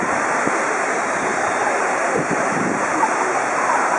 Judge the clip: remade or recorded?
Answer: remade